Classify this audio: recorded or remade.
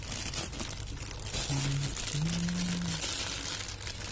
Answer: recorded